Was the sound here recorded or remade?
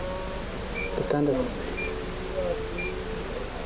recorded